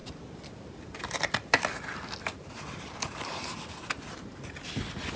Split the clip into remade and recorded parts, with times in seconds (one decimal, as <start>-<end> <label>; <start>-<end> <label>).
0.0-3.1 remade; 3.1-5.2 recorded